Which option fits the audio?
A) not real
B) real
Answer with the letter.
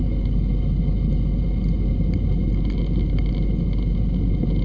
B